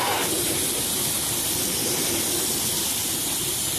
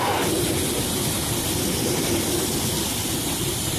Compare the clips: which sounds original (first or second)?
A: first